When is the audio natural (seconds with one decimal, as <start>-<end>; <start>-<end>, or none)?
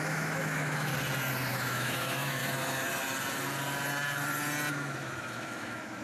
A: 0.9-1.5; 2.4-4.7